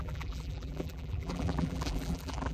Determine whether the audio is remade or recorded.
remade